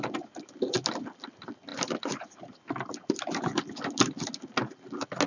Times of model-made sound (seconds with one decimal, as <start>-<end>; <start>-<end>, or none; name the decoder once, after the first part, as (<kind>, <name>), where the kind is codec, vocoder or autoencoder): none